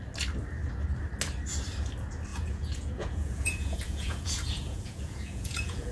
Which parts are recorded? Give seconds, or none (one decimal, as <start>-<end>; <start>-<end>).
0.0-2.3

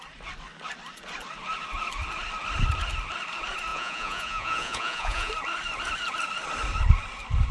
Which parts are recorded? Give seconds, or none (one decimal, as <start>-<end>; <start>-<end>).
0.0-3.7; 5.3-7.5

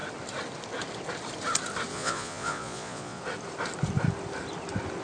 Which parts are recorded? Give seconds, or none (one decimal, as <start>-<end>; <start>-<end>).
0.0-1.9; 3.2-5.0

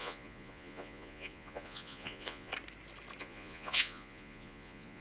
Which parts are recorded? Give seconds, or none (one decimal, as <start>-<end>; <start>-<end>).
2.5-3.2